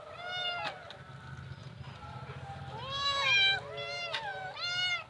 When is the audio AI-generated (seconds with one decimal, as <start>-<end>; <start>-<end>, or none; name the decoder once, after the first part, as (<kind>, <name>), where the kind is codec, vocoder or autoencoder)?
1.6-2.6 (vocoder, BigVGAN v2)